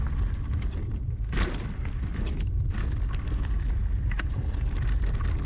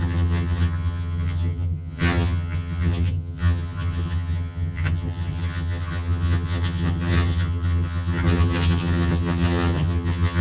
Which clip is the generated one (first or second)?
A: second